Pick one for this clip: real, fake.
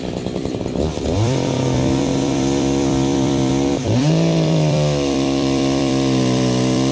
fake